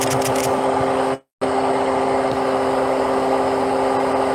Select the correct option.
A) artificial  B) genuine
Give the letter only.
B